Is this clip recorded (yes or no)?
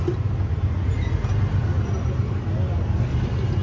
yes